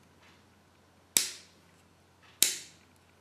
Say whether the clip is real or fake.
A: real